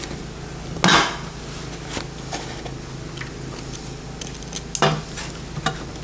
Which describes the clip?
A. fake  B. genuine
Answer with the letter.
B